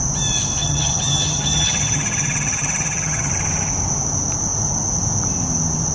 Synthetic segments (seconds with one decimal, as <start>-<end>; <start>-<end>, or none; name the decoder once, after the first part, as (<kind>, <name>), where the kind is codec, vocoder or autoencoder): 0.6-3.3 (vocoder, HiFi-GAN)